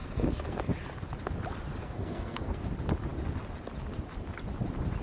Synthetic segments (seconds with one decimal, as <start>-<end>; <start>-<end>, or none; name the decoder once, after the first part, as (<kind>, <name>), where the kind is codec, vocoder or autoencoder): 0.0-0.7 (codec, SNAC); 1.8-2.7